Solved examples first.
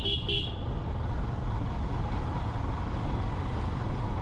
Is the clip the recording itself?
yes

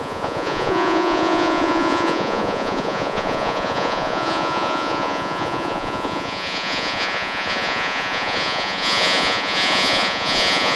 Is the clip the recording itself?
no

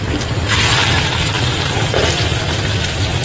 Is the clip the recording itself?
no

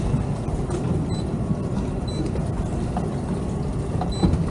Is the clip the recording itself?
yes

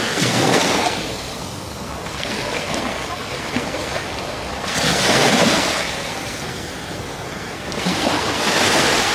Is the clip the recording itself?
no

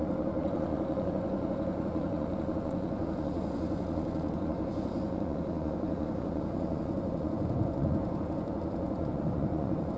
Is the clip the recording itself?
no